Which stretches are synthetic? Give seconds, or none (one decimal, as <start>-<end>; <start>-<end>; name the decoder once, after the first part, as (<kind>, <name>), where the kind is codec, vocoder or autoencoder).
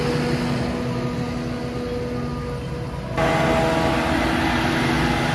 none